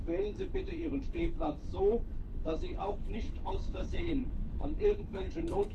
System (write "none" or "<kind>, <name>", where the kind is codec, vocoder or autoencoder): codec, HILCodec